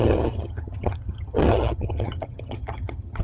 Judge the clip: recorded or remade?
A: remade